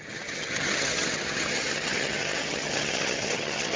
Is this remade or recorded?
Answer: remade